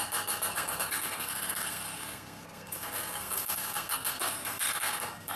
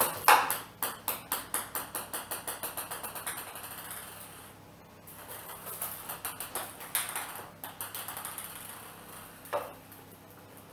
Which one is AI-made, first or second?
first